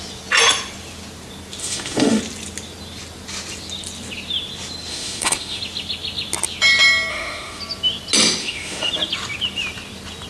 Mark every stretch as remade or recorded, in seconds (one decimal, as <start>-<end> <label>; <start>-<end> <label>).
0.0-1.6 recorded; 1.6-2.2 remade; 2.2-4.9 recorded; 4.9-5.6 remade; 5.6-7.1 recorded; 7.1-7.6 remade; 7.6-8.4 recorded; 8.4-8.9 remade; 8.9-10.3 recorded